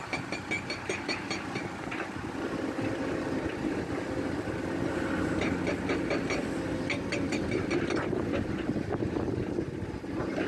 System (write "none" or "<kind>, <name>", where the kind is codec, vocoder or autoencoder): none